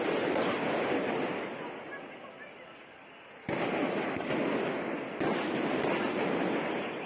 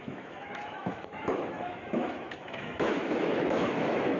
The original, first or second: first